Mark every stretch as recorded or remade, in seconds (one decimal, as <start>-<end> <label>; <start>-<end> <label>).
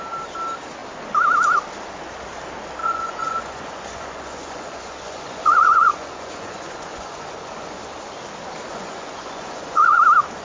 0.0-2.8 recorded; 2.8-7.8 remade; 7.8-8.7 recorded; 8.7-10.0 remade; 10.0-10.4 recorded